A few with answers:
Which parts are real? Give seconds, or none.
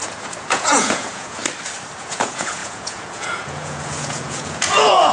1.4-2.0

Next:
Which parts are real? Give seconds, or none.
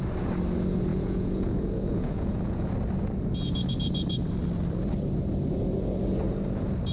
0.0-0.9; 2.7-6.9